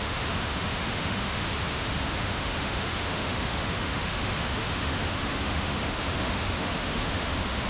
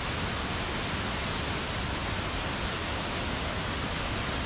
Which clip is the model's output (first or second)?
first